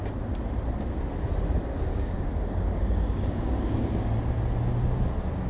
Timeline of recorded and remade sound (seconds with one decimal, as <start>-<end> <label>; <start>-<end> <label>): 0.0-1.9 recorded; 1.9-4.0 remade; 4.0-5.5 recorded